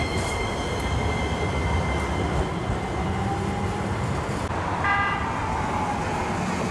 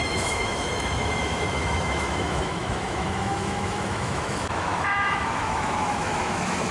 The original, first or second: first